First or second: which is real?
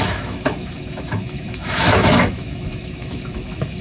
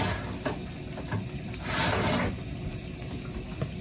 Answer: second